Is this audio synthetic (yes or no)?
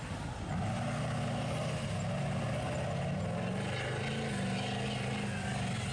no